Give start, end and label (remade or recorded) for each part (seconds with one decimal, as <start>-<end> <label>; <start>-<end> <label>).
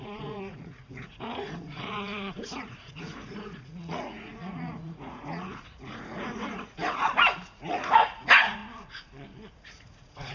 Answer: 0.0-8.6 remade; 8.6-9.5 recorded; 9.5-10.3 remade